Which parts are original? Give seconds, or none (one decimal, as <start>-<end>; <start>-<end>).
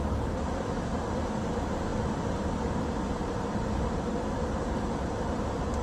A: 0.0-5.8